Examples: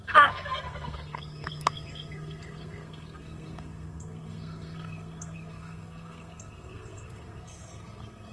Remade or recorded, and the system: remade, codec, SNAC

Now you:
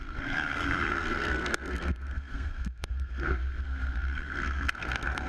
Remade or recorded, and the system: remade, codec, SNAC